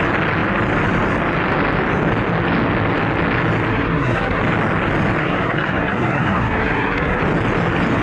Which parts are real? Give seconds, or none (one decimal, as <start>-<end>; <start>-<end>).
0.0-3.7; 4.4-5.2; 7.2-8.0